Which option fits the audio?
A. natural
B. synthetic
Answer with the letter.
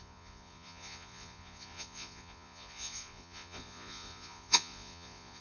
B